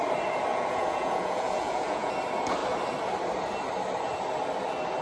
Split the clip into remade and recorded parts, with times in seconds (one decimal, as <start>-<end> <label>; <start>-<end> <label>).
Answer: 0.0-0.5 recorded; 0.5-2.1 remade; 2.1-5.0 recorded